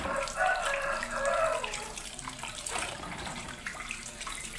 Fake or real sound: fake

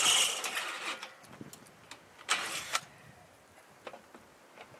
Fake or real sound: real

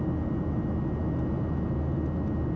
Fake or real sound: real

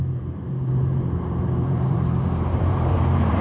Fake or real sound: fake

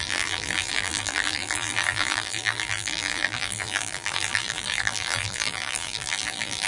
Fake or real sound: fake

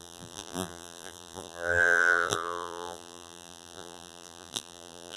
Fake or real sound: fake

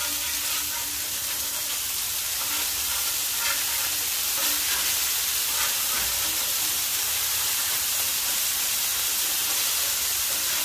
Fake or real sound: real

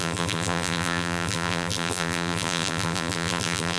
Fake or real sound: fake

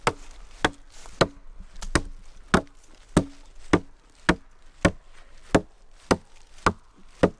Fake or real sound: real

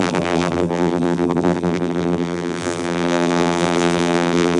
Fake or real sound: fake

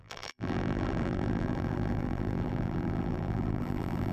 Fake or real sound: fake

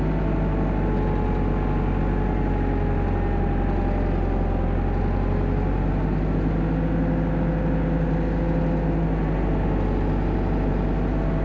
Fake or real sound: real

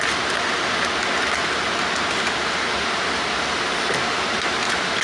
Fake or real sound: real